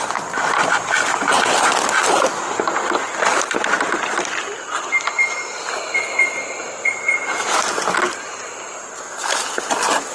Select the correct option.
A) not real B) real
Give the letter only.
B